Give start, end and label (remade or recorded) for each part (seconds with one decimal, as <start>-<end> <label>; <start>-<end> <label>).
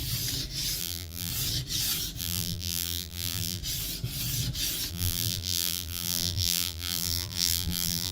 0.0-0.8 recorded; 0.8-1.3 remade; 1.3-2.2 recorded; 2.2-3.6 remade; 3.6-4.9 recorded; 4.9-8.1 remade